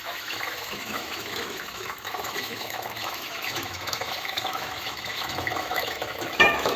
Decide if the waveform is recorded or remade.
remade